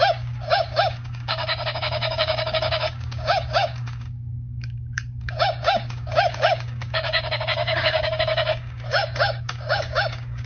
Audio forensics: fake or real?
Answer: fake